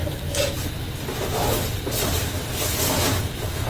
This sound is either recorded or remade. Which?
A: recorded